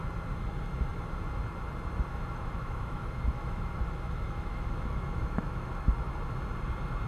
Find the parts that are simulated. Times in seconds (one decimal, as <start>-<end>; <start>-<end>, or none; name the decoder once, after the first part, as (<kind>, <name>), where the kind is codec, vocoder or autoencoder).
2.1-5.7 (autoencoder, DAC-VAE)